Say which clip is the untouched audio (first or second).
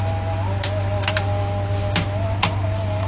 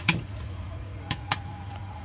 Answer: first